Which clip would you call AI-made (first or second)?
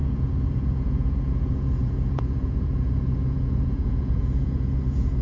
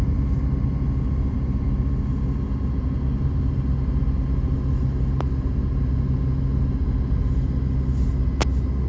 first